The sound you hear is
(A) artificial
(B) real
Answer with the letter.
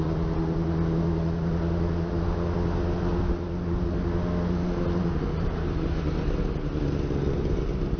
B